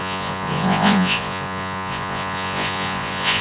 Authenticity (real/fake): fake